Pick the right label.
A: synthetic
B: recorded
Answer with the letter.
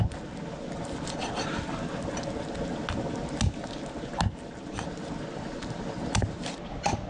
B